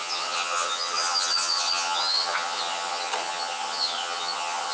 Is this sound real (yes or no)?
no